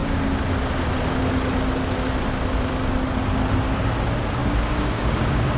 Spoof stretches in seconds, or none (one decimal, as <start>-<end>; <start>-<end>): 4.4-5.6

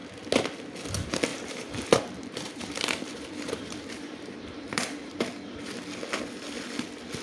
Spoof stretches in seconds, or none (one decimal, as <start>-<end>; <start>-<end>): 1.3-5.2

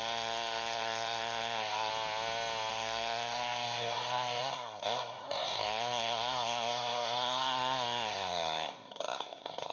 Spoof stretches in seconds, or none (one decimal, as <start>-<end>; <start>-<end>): 0.0-1.9; 2.7-9.7

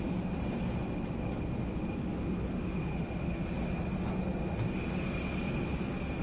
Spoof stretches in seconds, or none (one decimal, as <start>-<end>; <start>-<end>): none

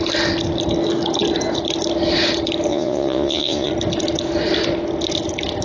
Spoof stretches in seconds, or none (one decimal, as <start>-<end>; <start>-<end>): 2.7-3.7

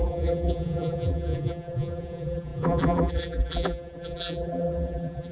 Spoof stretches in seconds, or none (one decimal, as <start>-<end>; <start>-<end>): 0.0-5.3

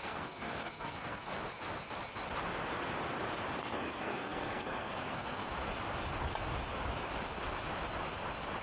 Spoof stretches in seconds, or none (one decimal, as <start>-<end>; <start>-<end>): 0.0-1.3; 3.6-5.4